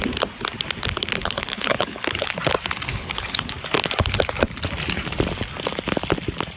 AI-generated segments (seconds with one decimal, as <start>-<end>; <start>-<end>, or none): 1.2-2.3; 2.9-3.5